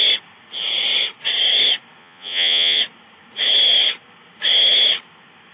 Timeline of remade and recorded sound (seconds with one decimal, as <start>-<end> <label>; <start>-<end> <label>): 0.0-2.0 recorded; 2.0-2.8 remade; 2.8-5.5 recorded